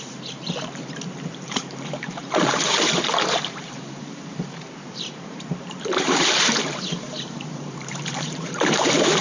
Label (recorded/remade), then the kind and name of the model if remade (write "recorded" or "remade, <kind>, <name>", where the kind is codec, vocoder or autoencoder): remade, vocoder, BigVGAN v2